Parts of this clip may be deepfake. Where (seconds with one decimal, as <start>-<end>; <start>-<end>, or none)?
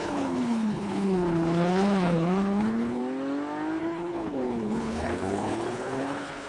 0.0-3.0; 3.8-6.5